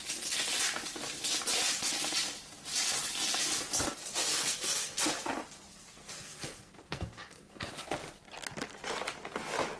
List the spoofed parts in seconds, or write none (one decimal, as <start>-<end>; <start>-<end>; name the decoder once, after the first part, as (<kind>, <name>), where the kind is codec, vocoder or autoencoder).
4.3-5.0 (codec, SNAC); 5.7-7.7